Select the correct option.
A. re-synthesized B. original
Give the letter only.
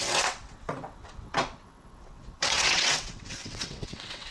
A